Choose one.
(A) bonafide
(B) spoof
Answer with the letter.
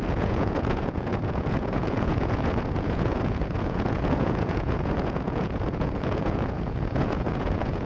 B